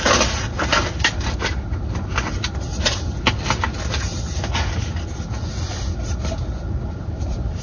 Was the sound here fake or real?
real